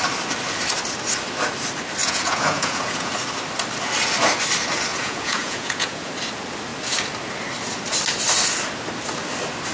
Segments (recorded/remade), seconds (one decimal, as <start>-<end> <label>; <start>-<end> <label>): 0.0-2.0 recorded; 2.0-3.1 remade; 3.1-4.9 recorded; 4.9-6.1 remade; 6.1-9.7 recorded